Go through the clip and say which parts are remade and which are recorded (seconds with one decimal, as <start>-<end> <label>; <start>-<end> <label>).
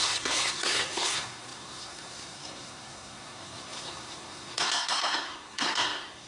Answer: 0.0-6.3 remade